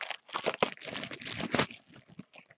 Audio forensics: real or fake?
real